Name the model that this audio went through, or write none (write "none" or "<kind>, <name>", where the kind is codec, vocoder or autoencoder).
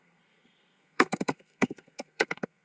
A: codec, SNAC